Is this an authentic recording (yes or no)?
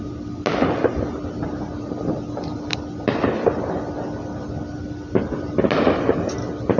yes